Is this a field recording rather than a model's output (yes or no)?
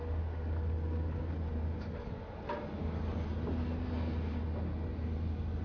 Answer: yes